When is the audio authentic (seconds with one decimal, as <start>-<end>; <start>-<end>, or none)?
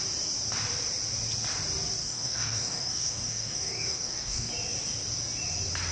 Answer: 0.0-2.0; 4.5-5.9